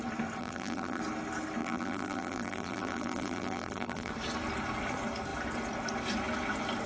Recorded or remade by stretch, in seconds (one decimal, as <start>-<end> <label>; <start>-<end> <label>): 0.0-0.4 recorded; 0.4-1.0 remade; 1.0-1.6 recorded; 1.6-4.1 remade; 4.1-6.9 recorded